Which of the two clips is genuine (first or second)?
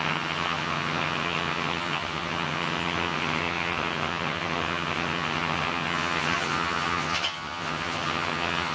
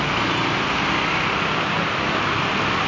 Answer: second